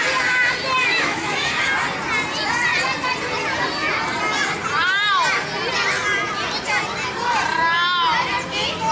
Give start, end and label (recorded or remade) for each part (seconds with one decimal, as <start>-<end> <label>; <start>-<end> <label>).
0.0-0.8 recorded; 0.8-1.6 remade; 1.6-8.9 recorded